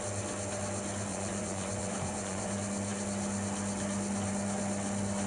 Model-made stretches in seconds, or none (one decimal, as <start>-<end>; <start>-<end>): 1.1-2.5